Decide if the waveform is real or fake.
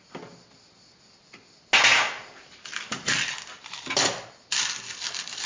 real